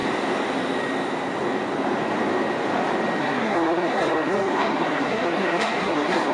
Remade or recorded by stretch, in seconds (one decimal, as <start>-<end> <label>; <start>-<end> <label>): 0.0-3.2 recorded; 3.2-6.3 remade

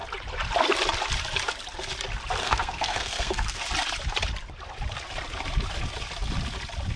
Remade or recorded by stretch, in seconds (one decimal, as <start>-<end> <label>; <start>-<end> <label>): 0.0-2.4 recorded; 2.4-3.6 remade; 3.6-7.0 recorded

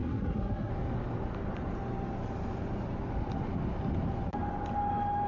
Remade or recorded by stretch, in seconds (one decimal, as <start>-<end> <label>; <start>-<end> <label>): 0.0-0.7 remade; 0.7-5.3 recorded

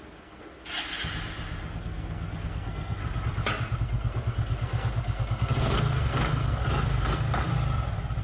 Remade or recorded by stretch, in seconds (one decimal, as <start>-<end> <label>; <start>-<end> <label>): 0.0-0.6 remade; 0.6-1.8 recorded; 1.8-3.0 remade; 3.0-3.8 recorded; 3.8-7.5 remade; 7.5-8.2 recorded

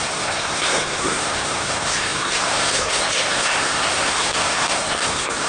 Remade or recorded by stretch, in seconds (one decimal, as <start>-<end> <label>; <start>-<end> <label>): 0.0-5.5 remade

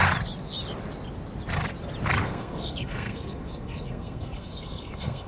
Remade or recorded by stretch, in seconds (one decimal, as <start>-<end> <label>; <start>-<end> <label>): 0.0-2.2 recorded; 2.2-5.3 remade

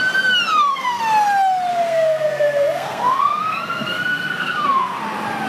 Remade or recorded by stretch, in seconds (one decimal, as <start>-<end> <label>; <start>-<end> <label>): 0.0-0.5 recorded; 0.5-1.0 remade; 1.0-1.7 recorded; 1.7-5.0 remade; 5.0-5.5 recorded